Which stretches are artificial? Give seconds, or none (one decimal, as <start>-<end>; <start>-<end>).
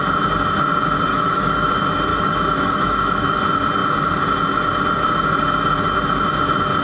1.1-1.7; 2.1-3.4